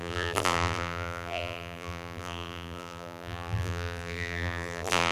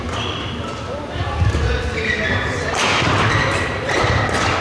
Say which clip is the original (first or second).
second